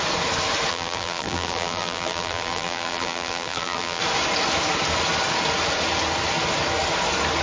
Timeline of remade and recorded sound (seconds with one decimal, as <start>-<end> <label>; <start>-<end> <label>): 0.0-0.7 recorded; 0.7-4.0 remade; 4.0-7.4 recorded